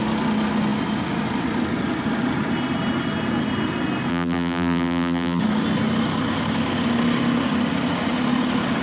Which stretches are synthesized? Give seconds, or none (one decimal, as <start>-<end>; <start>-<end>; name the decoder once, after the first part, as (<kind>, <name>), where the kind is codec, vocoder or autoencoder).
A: 4.1-5.4 (vocoder, BigVGAN v2)